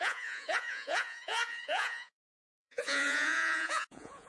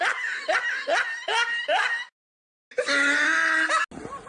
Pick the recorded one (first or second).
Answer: second